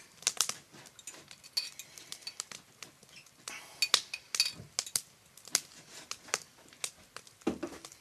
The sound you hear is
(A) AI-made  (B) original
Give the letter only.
B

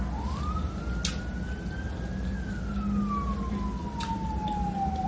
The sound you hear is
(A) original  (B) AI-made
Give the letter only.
A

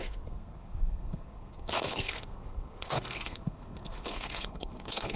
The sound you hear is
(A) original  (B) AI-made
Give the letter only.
B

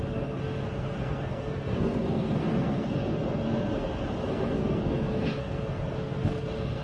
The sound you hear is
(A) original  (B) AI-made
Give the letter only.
B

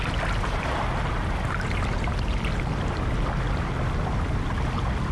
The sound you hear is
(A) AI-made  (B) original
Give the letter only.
B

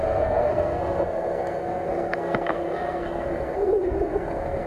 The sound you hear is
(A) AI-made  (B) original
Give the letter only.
A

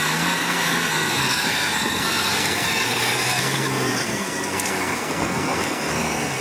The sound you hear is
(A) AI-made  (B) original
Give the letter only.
A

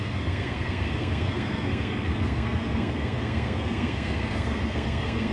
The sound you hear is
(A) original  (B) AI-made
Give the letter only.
B